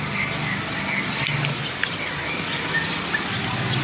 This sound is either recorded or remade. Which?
recorded